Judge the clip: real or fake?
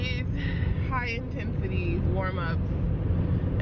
real